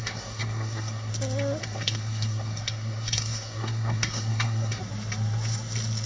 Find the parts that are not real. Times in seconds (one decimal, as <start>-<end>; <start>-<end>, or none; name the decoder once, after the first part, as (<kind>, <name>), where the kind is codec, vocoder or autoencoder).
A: 0.0-1.1 (codec, SNAC); 1.6-4.8